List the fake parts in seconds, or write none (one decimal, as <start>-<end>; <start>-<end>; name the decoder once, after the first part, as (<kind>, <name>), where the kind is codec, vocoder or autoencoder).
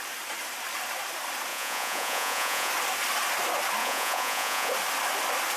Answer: 1.5-2.7 (vocoder, Vocos); 3.8-4.7